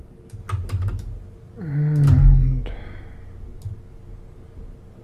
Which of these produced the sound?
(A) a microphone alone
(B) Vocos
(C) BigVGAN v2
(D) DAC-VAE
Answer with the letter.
A